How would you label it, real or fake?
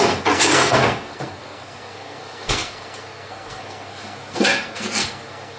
fake